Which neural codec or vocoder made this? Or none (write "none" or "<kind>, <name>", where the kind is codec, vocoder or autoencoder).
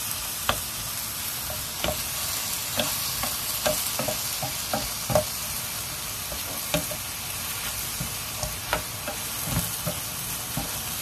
none